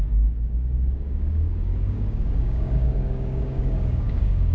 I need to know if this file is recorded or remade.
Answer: remade